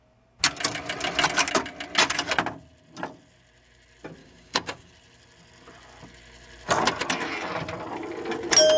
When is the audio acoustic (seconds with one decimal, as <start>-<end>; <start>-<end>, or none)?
0.0-4.2; 4.9-8.8